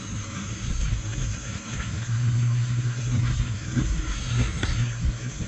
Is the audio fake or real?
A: fake